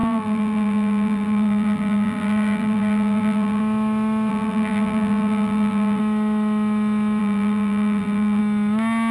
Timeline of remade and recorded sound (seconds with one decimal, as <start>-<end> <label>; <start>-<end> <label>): 0.0-3.6 remade; 3.6-4.3 recorded; 4.3-6.0 remade; 6.0-7.2 recorded; 7.2-8.4 remade; 8.4-9.1 recorded